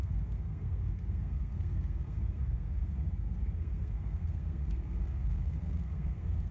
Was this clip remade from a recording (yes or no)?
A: yes